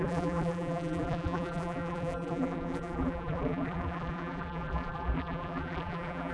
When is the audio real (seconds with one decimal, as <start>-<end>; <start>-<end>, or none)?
none